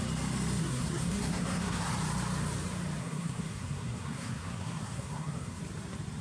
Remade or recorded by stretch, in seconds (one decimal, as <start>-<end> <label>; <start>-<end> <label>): 0.0-0.6 recorded; 0.6-1.9 remade; 1.9-3.0 recorded; 3.0-5.6 remade; 5.6-6.2 recorded